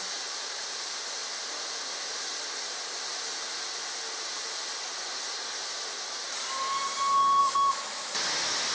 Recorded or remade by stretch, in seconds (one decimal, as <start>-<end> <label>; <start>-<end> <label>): 0.0-7.4 recorded; 7.4-8.1 remade; 8.1-8.7 recorded